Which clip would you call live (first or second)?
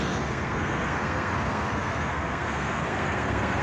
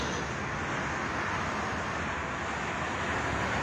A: second